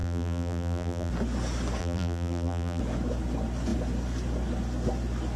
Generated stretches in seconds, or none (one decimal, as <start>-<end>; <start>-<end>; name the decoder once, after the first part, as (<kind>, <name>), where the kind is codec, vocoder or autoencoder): 0.0-1.1 (vocoder, BigVGAN v2); 1.8-2.8